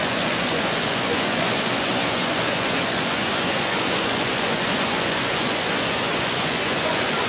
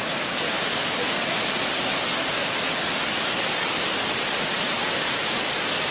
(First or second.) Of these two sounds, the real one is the second